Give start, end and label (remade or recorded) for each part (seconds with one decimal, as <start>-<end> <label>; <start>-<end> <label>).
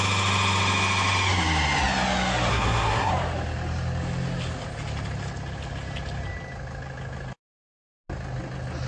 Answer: 0.0-2.5 recorded; 2.5-3.1 remade; 3.1-8.9 recorded